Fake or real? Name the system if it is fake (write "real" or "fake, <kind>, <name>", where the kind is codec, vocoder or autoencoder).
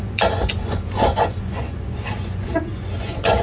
fake, vocoder, Vocos